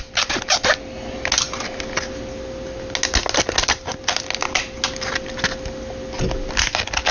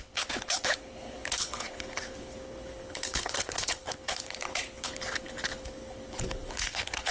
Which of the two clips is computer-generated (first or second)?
second